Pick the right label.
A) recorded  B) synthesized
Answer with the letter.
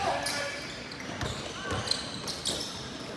A